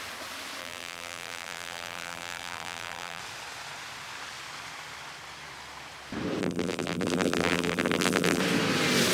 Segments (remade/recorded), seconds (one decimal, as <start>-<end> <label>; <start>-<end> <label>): 0.0-0.6 recorded; 0.6-3.2 remade; 3.2-6.4 recorded; 6.4-8.4 remade; 8.4-9.1 recorded